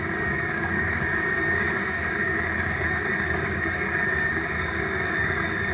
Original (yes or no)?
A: no